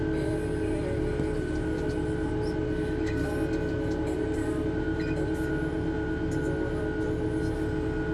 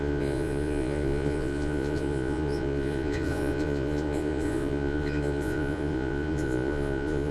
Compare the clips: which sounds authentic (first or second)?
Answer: first